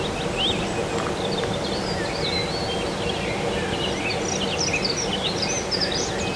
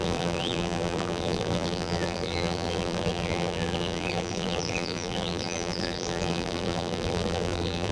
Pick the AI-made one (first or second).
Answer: second